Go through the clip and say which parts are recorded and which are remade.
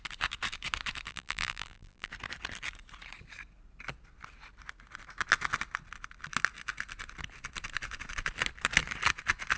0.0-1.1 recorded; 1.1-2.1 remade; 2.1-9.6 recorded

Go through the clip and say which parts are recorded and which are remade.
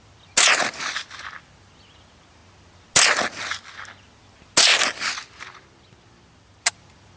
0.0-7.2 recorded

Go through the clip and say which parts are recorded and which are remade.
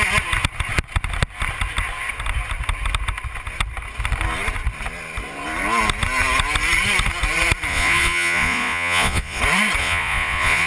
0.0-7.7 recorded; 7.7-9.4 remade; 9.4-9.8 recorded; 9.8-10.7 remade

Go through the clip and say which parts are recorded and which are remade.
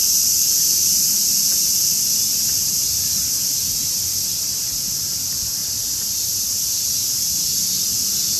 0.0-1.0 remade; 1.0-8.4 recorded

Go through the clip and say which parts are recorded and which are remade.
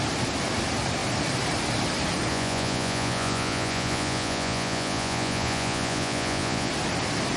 0.0-2.3 recorded; 2.3-6.7 remade; 6.7-7.4 recorded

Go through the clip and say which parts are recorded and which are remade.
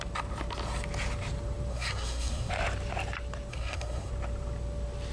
0.0-1.7 recorded; 1.7-2.5 remade; 2.5-3.5 recorded; 3.5-4.1 remade; 4.1-5.1 recorded